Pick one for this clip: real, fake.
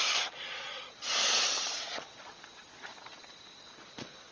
fake